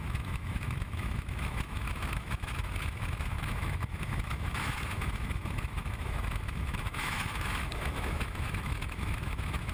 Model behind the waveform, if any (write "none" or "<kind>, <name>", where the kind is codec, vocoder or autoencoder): autoencoder, DAC-VAE